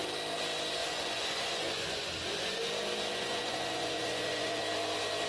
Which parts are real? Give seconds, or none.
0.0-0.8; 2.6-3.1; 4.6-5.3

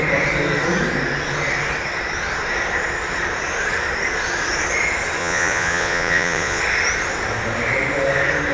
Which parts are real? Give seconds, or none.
0.0-5.2; 6.6-8.5

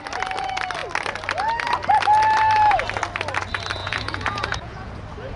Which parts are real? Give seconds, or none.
0.0-3.8; 4.9-5.4

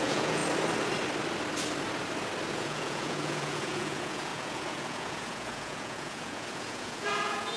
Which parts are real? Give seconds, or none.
0.4-2.5

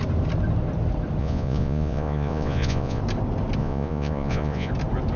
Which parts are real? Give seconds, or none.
0.0-1.2; 3.0-3.6; 4.7-5.2

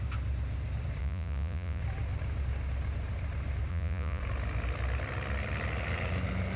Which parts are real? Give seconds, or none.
0.0-1.0; 1.8-3.7; 4.2-6.6

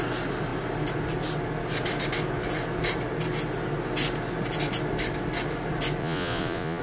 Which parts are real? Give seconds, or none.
0.0-6.0